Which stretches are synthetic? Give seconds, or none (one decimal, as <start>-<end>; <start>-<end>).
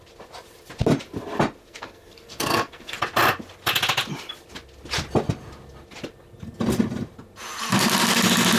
1.6-3.0